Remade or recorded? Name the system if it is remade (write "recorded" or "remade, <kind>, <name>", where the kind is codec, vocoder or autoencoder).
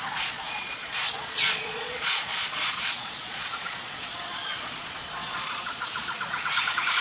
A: remade, vocoder, Vocos